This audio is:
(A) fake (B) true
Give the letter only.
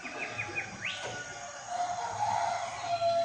B